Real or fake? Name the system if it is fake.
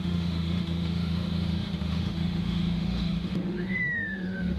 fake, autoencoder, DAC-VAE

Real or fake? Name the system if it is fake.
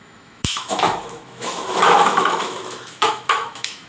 fake, autoencoder, DAC-VAE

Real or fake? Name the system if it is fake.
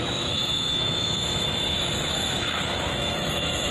fake, autoencoder, DAC-VAE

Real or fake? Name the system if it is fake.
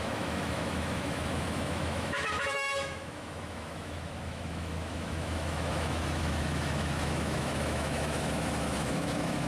fake, autoencoder, DAC-VAE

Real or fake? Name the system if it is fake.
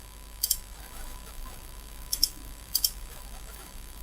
fake, autoencoder, DAC-VAE